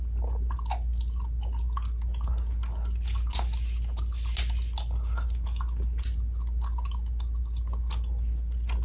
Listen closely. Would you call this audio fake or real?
real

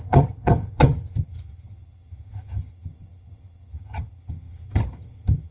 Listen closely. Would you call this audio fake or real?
fake